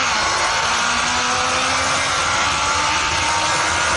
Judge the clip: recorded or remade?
recorded